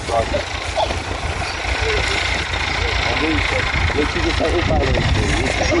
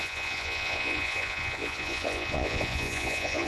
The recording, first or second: first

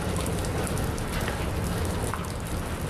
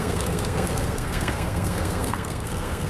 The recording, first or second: first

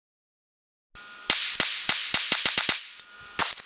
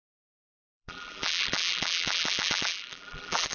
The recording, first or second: first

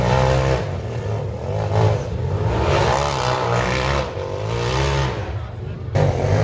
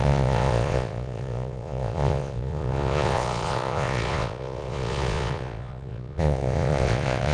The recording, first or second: first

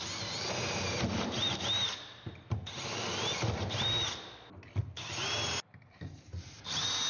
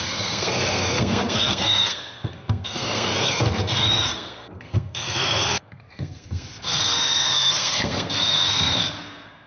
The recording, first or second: first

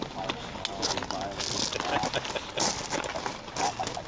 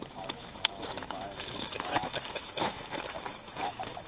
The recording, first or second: first